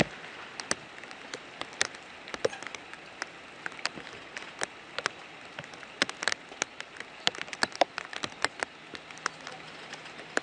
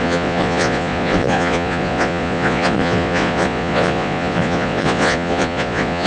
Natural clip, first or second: first